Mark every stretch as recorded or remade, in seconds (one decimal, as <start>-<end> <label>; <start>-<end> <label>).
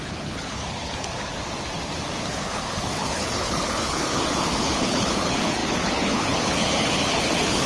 0.0-1.3 remade; 1.3-2.3 recorded; 2.3-7.7 remade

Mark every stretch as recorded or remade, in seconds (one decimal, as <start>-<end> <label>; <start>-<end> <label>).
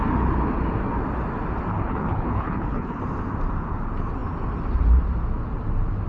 0.0-1.7 recorded; 1.7-3.0 remade; 3.0-6.1 recorded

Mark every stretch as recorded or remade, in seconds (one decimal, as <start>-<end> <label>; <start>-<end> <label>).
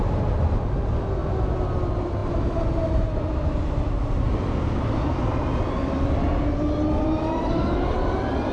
0.0-8.5 recorded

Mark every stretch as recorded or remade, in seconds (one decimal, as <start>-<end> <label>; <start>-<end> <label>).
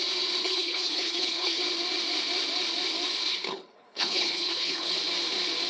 0.0-0.4 recorded; 0.4-1.6 remade; 1.6-3.3 recorded; 3.3-5.0 remade; 5.0-5.7 recorded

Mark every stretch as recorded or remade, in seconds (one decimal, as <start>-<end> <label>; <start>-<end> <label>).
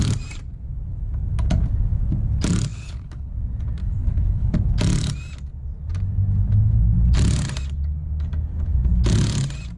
0.0-2.7 recorded; 2.7-3.3 remade; 3.3-3.8 recorded; 3.8-4.5 remade; 4.5-9.8 recorded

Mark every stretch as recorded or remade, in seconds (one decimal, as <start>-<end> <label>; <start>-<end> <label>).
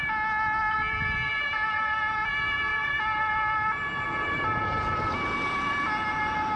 0.0-6.6 recorded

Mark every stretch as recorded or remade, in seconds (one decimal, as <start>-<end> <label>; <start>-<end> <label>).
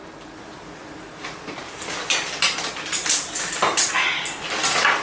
0.0-5.0 recorded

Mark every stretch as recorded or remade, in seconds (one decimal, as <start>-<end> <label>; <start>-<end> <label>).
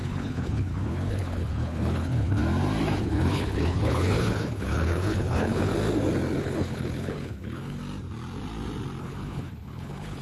0.0-2.4 remade; 2.4-3.0 recorded; 3.0-5.7 remade; 5.7-6.4 recorded; 6.4-7.8 remade; 7.8-9.0 recorded; 9.0-10.2 remade